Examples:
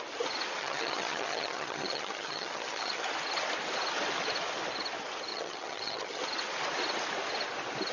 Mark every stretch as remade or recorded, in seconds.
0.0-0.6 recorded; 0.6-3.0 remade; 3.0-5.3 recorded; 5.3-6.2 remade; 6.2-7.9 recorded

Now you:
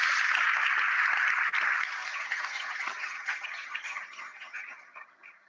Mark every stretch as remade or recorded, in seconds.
0.0-2.1 recorded; 2.1-5.5 remade

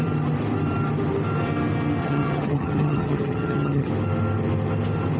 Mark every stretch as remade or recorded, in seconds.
0.0-2.0 recorded; 2.0-3.9 remade; 3.9-5.2 recorded